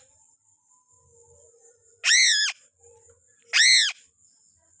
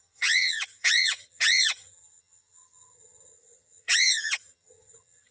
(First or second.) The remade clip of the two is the second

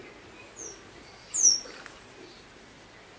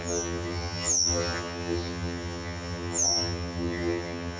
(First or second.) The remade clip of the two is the second